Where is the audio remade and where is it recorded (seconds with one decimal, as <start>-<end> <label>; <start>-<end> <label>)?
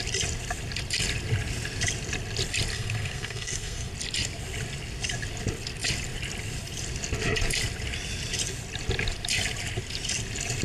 0.0-2.7 recorded; 2.7-3.9 remade; 3.9-10.6 recorded